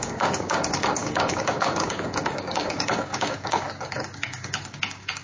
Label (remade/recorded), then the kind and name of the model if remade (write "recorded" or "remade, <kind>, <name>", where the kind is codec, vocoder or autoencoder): remade, codec, DAC